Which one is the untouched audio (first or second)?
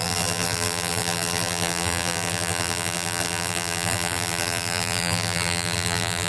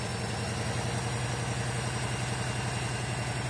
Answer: second